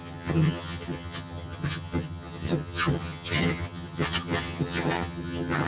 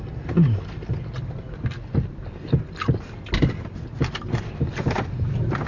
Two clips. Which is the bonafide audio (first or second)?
second